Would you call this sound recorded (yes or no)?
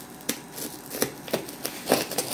yes